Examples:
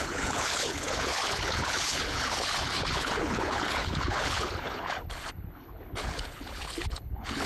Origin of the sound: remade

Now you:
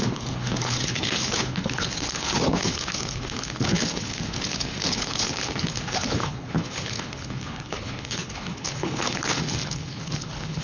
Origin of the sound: remade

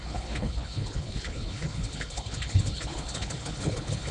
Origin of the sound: remade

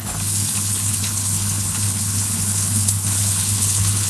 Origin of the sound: remade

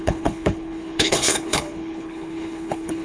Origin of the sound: remade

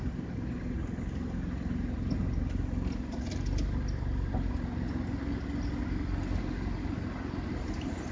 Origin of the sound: recorded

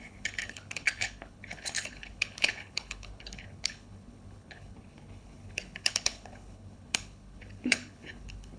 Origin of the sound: remade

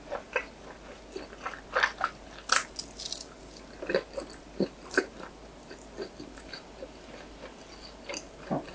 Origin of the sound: recorded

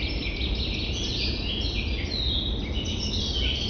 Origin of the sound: recorded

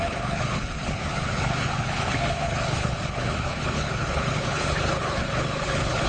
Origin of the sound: remade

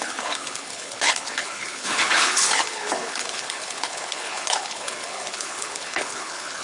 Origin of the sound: remade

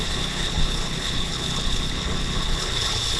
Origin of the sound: remade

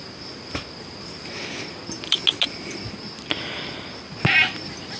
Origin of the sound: recorded